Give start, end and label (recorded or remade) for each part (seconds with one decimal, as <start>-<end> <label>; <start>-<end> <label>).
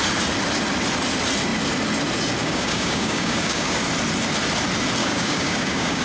0.0-2.4 recorded; 2.4-3.8 remade; 3.8-5.0 recorded; 5.0-6.0 remade